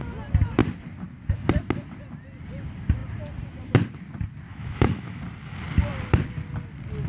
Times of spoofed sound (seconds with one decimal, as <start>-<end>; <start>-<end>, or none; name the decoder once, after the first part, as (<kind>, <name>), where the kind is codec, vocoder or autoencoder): 4.5-5.2 (autoencoder, DAC-VAE)